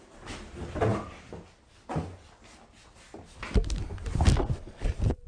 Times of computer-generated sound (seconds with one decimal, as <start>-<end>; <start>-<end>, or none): none

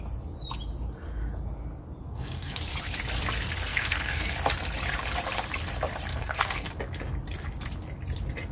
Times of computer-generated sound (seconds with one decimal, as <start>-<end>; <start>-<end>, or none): 2.0-2.6; 3.7-4.3; 6.1-6.7

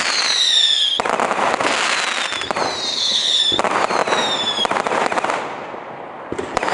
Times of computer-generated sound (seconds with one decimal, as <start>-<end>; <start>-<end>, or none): 2.9-3.4

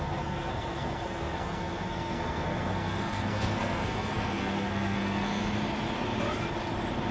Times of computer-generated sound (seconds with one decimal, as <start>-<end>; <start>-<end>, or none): 0.0-5.4

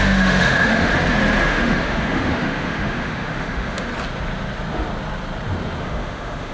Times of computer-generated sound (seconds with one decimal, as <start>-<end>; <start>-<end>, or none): 0.0-0.9; 1.4-3.9; 5.8-6.5

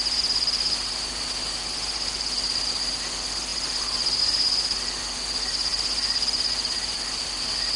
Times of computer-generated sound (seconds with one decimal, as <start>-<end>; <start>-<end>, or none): none

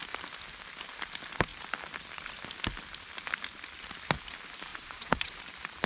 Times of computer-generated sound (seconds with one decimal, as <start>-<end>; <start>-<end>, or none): 4.7-5.4

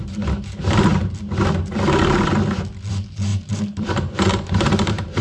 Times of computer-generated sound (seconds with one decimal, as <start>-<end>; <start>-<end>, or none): 0.0-0.9; 1.4-2.3; 2.9-5.2